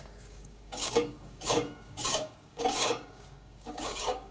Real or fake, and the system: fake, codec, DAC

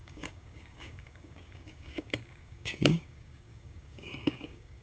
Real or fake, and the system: fake, codec, DAC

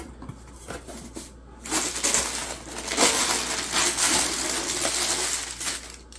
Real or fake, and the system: real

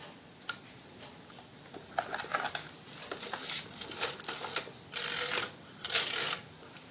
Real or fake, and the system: real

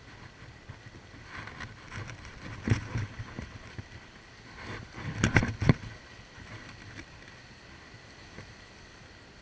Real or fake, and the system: real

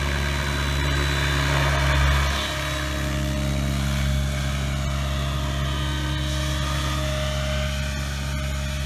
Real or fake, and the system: real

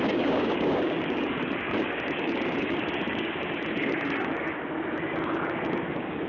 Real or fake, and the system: fake, codec, DAC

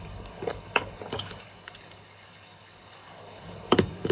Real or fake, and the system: fake, codec, DAC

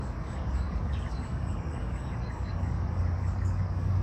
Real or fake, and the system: fake, codec, DAC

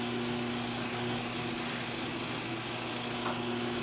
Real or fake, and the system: real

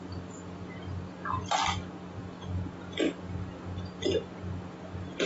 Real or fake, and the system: real